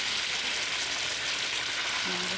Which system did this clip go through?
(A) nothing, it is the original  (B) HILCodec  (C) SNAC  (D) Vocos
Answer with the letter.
A